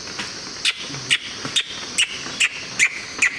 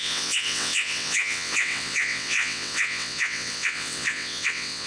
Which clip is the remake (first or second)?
second